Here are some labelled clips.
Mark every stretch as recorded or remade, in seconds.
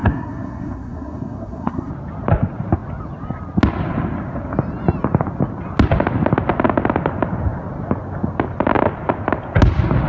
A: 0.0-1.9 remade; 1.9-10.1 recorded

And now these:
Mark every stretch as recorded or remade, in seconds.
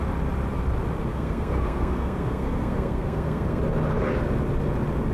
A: 0.0-1.1 recorded; 1.1-3.6 remade; 3.6-5.1 recorded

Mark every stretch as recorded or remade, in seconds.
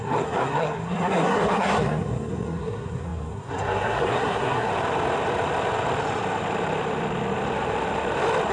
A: 0.0-4.7 remade; 4.7-8.5 recorded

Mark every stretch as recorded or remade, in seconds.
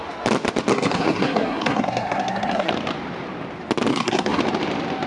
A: 0.0-0.7 recorded; 0.7-2.7 remade; 2.7-3.9 recorded; 3.9-4.4 remade; 4.4-5.1 recorded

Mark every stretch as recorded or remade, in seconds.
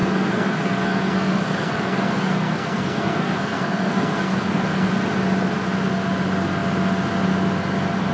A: 0.0-4.9 remade; 4.9-8.1 recorded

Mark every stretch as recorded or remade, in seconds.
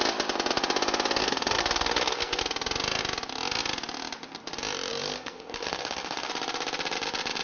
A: 0.0-1.2 recorded; 1.2-2.4 remade; 2.4-4.9 recorded; 4.9-6.3 remade; 6.3-7.4 recorded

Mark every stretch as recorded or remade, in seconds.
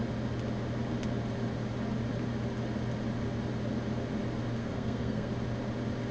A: 0.0-4.6 recorded; 4.6-5.3 remade; 5.3-6.1 recorded